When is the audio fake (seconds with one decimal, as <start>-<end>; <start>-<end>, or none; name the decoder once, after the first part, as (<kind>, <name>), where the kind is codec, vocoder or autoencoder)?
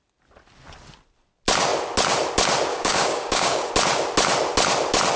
2.7-3.7 (codec, DAC)